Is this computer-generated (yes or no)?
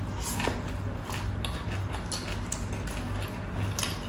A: no